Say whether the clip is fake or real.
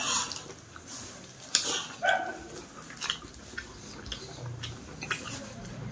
real